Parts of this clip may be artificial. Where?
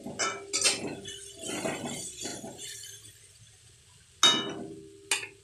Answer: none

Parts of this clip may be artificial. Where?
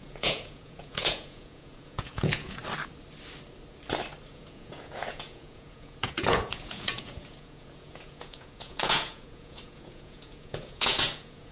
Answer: 0.0-2.6 (vocoder, Vocos); 4.3-11.5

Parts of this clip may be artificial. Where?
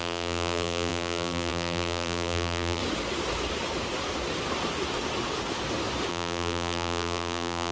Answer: 0.0-2.8 (vocoder, BigVGAN v2); 6.1-7.7